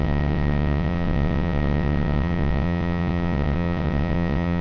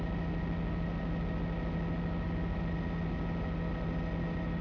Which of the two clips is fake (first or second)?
first